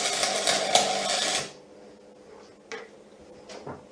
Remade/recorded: recorded